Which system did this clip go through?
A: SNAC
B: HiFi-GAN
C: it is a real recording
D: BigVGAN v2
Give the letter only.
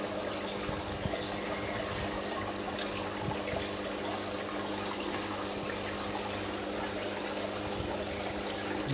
C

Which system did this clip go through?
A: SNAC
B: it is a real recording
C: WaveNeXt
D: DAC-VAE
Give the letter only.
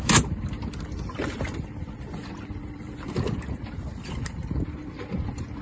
B